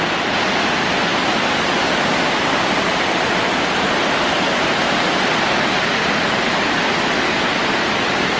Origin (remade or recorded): recorded